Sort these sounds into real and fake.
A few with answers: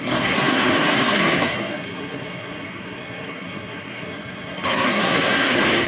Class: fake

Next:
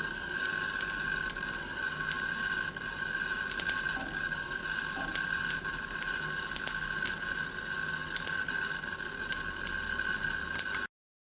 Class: real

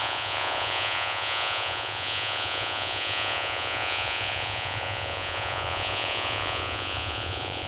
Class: fake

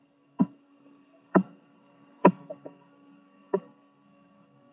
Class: fake